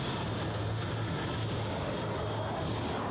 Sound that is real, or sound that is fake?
real